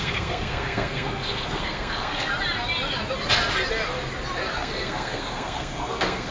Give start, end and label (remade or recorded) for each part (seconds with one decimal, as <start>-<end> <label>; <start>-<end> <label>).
0.0-2.3 remade; 2.3-4.5 recorded; 4.5-6.3 remade